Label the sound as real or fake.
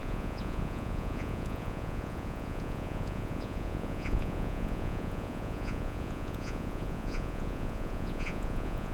fake